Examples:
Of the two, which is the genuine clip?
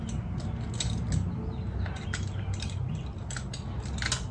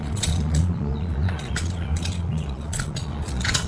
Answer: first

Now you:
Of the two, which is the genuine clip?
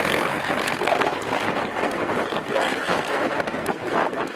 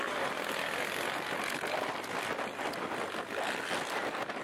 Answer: second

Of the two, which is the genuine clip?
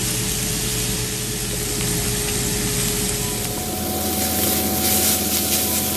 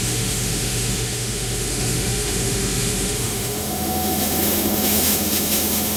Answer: first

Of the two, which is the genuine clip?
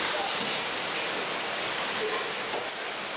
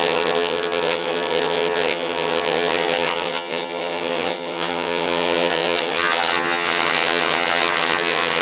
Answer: first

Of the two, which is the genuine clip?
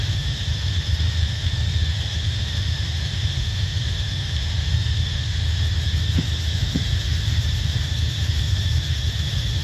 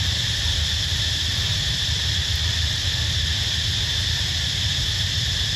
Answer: second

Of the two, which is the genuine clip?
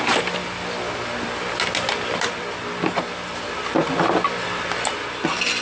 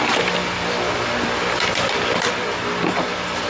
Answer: first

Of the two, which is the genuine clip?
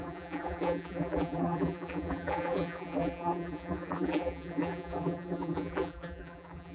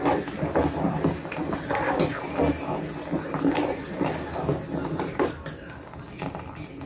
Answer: second